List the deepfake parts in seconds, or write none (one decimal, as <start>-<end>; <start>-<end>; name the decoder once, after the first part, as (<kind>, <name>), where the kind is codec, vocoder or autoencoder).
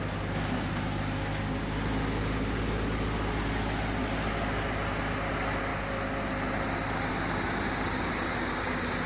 none